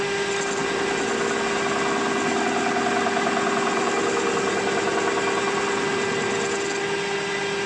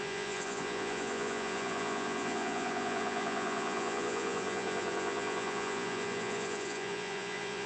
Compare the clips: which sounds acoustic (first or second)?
first